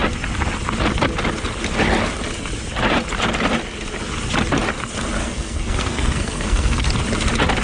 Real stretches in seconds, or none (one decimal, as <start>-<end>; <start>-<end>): 0.0-5.2; 6.9-7.6